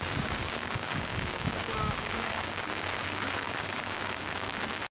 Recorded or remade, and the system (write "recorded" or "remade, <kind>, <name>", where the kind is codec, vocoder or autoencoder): remade, codec, DAC